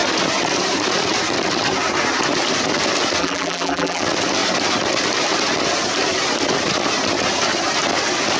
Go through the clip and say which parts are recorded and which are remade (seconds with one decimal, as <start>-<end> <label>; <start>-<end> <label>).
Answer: 0.0-3.2 recorded; 3.2-4.0 remade; 4.0-8.4 recorded